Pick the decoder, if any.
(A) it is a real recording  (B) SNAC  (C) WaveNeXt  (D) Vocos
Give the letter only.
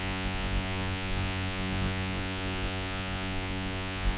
D